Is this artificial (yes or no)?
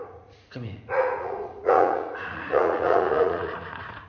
yes